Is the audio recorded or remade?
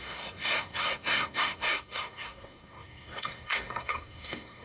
remade